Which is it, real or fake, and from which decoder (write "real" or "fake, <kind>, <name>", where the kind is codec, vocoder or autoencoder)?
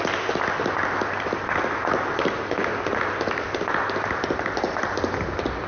real